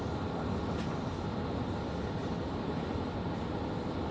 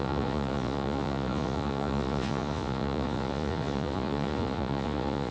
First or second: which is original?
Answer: first